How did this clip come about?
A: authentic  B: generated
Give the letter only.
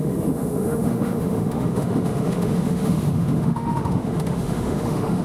B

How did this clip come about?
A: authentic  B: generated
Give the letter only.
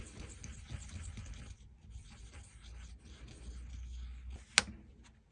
A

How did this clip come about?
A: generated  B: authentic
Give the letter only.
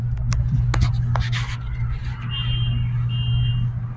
B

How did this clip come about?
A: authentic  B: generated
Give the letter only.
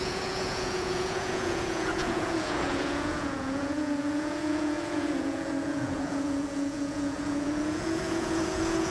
B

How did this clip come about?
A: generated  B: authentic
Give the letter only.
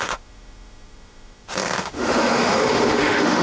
A